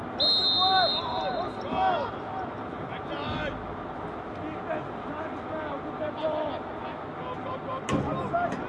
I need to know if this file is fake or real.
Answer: real